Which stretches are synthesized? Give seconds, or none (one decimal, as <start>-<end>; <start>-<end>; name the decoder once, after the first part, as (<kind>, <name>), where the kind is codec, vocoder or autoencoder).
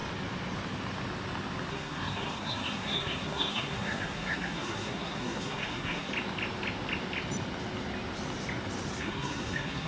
1.7-6.1 (codec, SNAC); 9.0-9.9